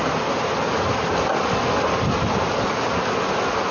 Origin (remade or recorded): recorded